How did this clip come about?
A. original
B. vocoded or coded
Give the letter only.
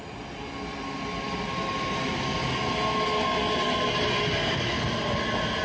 A